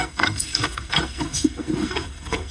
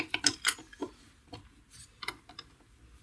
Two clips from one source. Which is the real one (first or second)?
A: second